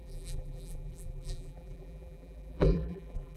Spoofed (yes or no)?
yes